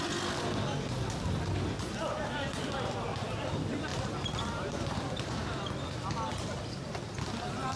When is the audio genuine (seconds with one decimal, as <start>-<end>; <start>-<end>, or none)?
0.0-3.9; 5.3-7.8